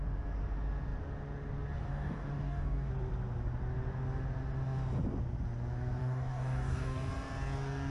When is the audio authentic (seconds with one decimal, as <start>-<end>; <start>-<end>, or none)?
0.0-1.9; 2.9-6.0; 7.1-7.9